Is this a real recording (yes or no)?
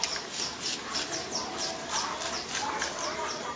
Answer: yes